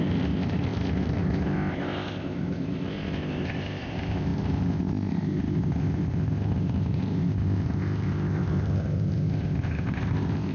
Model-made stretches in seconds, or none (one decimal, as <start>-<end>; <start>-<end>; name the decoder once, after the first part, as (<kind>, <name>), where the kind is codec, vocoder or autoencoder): 0.0-10.5 (codec, ZipCodec)